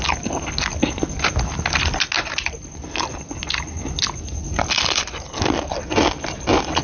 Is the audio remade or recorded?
recorded